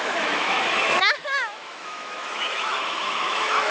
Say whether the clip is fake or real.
fake